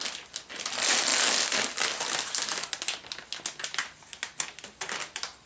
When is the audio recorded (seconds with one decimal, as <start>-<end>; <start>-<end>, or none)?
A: 0.0-5.5